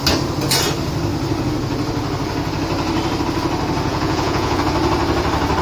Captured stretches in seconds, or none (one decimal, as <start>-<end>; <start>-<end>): 0.0-3.9; 4.6-5.6